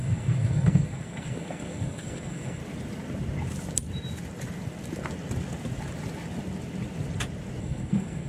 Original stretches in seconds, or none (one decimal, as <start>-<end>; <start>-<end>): 2.6-7.6